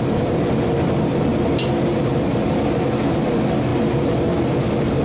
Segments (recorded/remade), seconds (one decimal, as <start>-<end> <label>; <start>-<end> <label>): 0.0-5.0 recorded